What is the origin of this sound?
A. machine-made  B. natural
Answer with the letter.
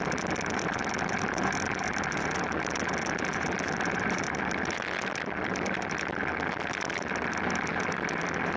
A